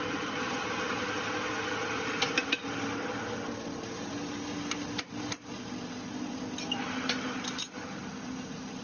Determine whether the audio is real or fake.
real